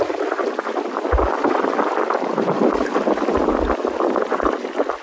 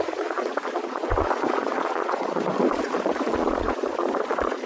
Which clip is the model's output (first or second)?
second